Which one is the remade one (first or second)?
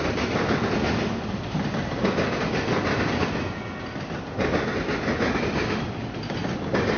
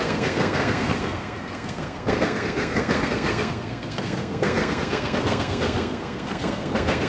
second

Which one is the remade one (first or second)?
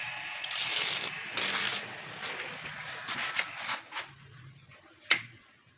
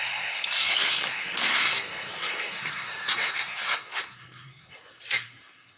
second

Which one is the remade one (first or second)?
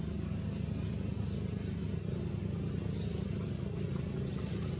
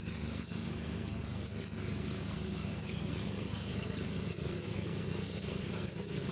second